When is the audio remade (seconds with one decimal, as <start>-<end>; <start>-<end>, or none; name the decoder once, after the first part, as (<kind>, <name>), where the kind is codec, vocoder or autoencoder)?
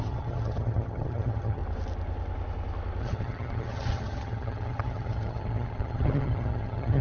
0.0-1.6 (vocoder, HiFi-GAN); 3.0-7.0